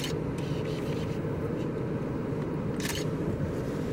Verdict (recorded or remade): recorded